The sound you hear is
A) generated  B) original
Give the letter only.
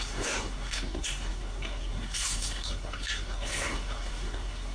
A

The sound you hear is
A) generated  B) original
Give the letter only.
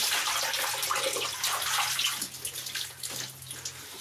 B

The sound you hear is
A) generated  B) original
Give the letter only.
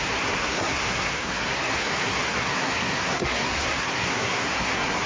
A